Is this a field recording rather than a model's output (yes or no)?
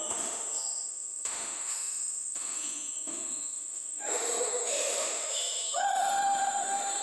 no